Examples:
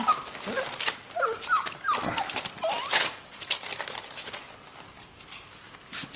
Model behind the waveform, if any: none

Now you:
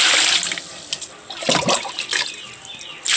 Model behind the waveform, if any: none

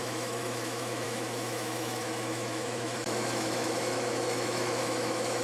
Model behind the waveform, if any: autoencoder, DAC-VAE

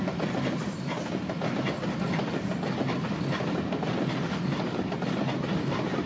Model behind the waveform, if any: none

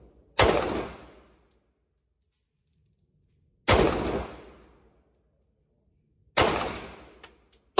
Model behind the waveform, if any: none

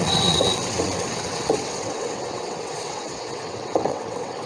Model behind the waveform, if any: vocoder, WaveNeXt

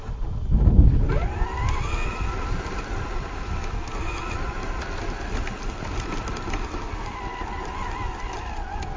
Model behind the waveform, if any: none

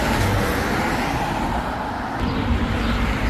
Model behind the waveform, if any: none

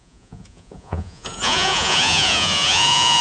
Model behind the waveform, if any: vocoder, Vocos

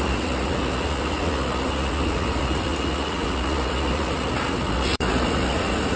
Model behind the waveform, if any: vocoder, Vocos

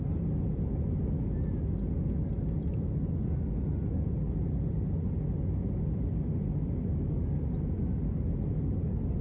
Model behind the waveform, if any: none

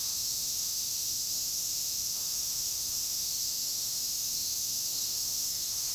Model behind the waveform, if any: autoencoder, DAC-VAE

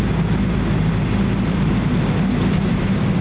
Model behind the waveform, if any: none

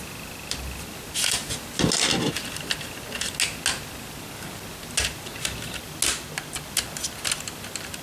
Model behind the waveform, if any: none